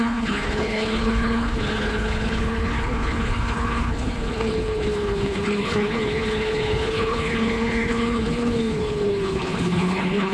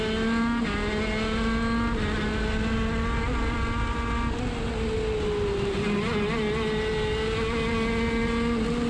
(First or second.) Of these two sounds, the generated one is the first